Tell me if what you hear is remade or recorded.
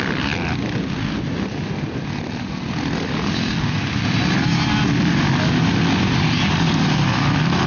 recorded